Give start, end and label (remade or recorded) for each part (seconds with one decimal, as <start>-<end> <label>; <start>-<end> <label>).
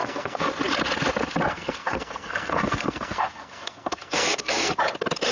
0.0-0.5 remade; 0.5-1.5 recorded; 1.5-4.7 remade; 4.7-5.3 recorded